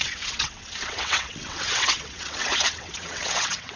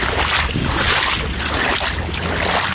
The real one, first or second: second